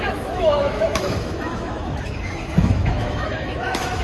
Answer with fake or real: fake